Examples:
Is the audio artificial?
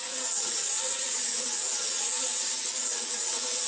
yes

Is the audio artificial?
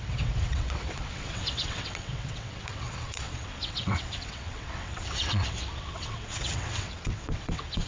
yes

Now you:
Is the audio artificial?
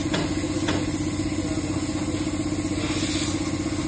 no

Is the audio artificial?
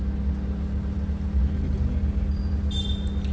no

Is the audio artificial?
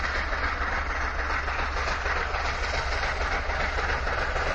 no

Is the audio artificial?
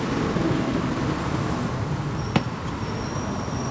no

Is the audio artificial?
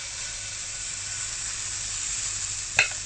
no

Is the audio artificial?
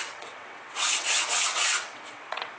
yes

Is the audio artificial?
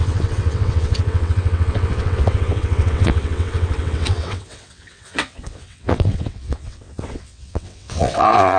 yes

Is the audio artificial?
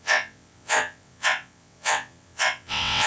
yes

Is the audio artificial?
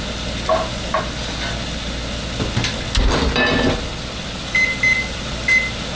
no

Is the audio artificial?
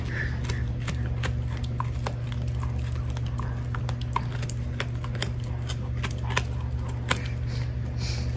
no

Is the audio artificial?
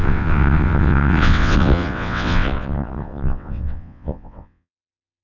yes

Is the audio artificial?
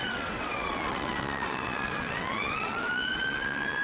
yes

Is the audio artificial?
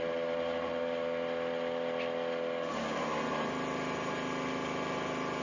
no